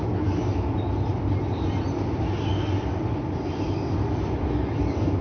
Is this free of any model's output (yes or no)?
yes